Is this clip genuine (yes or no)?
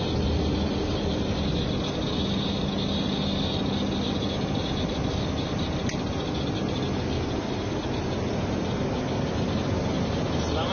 yes